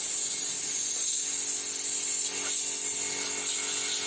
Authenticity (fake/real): real